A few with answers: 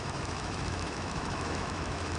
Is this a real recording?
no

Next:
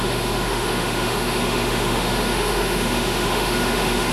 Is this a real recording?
no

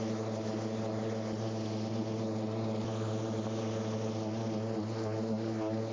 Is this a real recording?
yes